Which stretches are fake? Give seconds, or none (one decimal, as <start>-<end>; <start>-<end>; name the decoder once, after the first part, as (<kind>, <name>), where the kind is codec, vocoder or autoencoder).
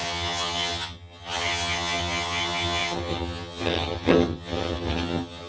0.0-5.5 (vocoder, HiFi-GAN)